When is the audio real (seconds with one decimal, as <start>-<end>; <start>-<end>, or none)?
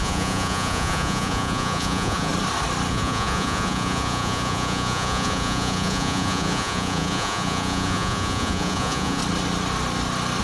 2.3-2.9; 9.2-10.4